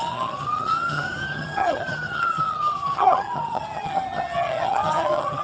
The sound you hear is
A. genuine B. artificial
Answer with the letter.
B